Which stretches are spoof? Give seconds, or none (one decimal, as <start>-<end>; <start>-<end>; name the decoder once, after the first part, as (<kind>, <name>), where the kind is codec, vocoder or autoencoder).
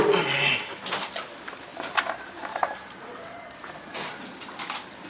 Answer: 1.7-3.1 (vocoder, BigVGAN v2)